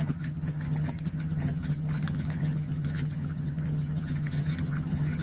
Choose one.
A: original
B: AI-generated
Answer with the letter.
B